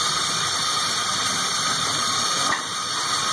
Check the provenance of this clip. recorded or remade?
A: recorded